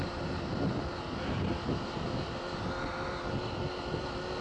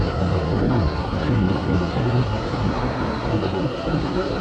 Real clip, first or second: first